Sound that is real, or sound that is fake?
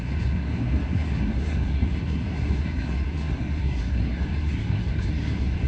fake